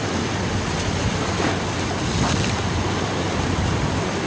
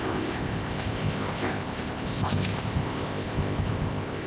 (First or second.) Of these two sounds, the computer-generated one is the second